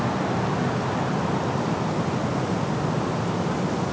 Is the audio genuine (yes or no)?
yes